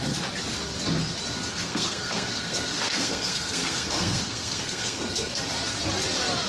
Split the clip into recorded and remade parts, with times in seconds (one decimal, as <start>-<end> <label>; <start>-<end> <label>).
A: 0.0-1.5 recorded; 1.5-5.4 remade; 5.4-6.5 recorded